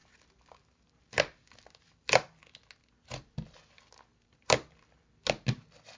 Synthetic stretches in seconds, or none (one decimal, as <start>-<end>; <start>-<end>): 0.0-2.4; 4.1-5.1